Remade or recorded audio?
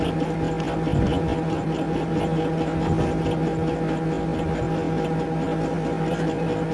recorded